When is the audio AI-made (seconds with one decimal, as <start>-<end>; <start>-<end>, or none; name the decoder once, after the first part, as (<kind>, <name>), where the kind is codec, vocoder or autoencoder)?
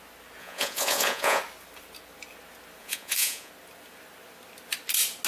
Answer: 0.4-1.4 (vocoder, Vocos); 2.8-3.5